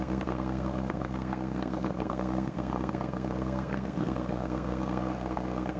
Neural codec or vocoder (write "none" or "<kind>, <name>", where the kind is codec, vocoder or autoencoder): codec, SNAC